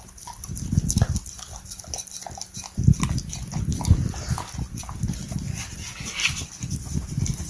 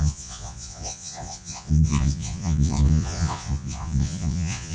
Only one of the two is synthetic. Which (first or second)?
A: second